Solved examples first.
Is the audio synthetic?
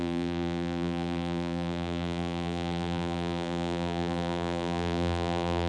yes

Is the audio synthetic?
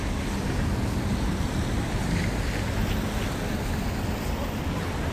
no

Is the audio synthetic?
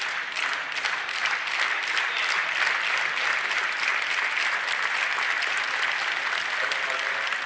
no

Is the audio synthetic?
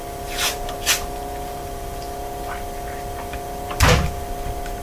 no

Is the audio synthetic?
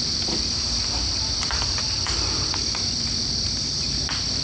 no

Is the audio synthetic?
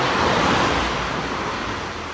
no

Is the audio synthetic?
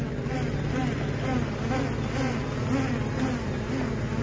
no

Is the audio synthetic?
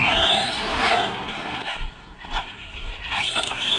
yes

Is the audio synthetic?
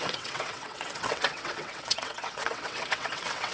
yes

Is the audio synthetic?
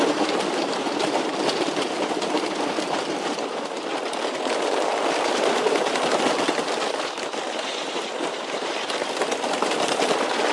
no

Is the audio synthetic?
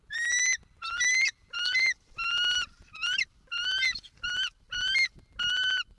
no